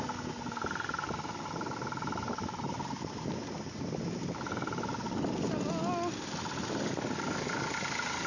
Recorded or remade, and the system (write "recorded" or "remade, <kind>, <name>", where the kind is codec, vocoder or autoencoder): recorded